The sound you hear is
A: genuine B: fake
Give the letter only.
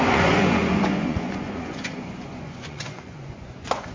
B